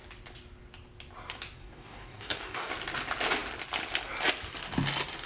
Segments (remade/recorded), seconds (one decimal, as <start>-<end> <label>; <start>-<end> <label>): 0.0-1.6 recorded; 1.6-2.7 remade; 2.7-5.3 recorded